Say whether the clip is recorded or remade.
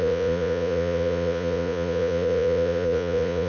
remade